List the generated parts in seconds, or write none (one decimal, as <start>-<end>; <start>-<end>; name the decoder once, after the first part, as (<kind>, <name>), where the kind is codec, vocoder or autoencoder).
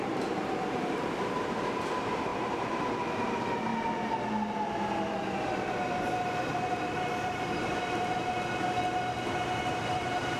0.0-3.7 (vocoder, BigVGAN v2); 6.5-8.2; 9.8-10.4